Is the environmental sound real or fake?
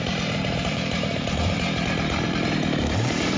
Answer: fake